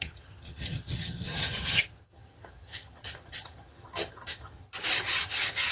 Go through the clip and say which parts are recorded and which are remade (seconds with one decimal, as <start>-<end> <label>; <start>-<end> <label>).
0.0-5.7 remade